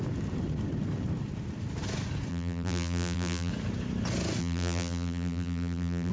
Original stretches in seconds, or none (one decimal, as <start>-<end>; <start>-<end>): 0.0-2.3; 3.5-4.4

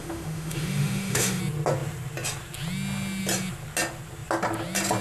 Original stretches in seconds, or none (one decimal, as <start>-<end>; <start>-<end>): 1.4-5.0